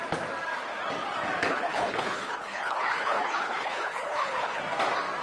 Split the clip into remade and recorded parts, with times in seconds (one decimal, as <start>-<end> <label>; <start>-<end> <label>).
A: 0.0-1.5 recorded; 1.5-4.6 remade; 4.6-5.2 recorded